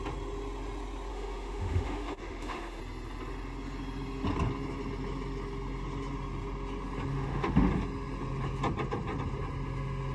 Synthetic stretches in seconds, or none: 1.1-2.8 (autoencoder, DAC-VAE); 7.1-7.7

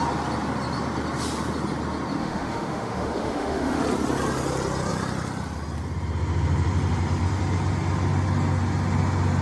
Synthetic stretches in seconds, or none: 2.2-3.8 (autoencoder, DAC-VAE)